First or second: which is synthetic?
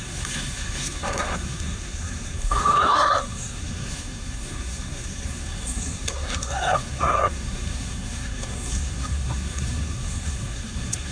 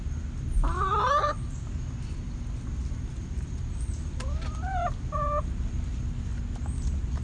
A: first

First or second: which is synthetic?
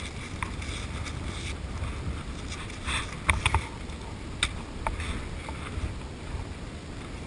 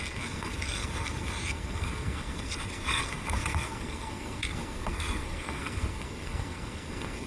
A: second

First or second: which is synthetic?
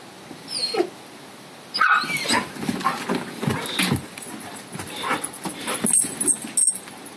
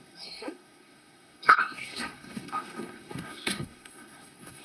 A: second